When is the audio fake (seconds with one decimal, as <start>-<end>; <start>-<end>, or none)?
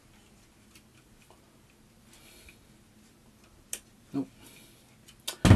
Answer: none